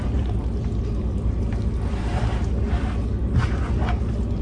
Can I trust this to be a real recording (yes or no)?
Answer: yes